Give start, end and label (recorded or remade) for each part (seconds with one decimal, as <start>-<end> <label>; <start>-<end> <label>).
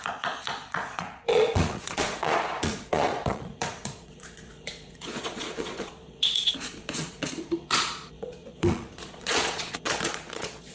0.0-10.7 remade